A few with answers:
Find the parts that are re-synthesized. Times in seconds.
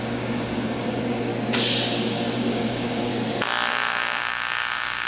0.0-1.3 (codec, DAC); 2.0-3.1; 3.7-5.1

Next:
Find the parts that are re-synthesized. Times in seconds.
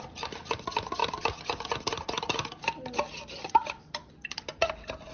none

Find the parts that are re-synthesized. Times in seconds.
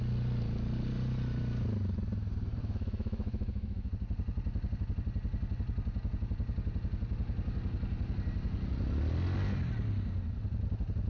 2.6-3.9 (autoencoder, DAC-VAE)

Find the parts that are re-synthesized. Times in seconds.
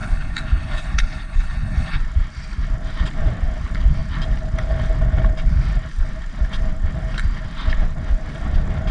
0.0-2.0 (codec, HILCodec)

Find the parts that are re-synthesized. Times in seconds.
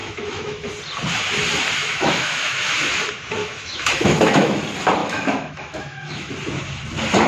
0.0-0.7 (autoencoder, DAC-VAE); 1.8-2.9; 3.4-4.6; 5.0-6.3